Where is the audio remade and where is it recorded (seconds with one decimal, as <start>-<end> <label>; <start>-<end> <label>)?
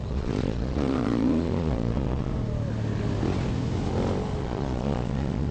0.0-2.3 remade; 2.3-4.4 recorded; 4.4-5.5 remade